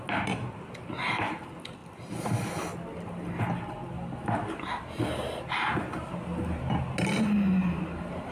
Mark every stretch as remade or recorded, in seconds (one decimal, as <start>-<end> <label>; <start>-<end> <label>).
0.0-8.3 recorded